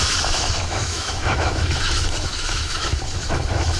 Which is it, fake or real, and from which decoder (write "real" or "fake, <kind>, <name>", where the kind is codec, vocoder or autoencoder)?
fake, autoencoder, DAC-VAE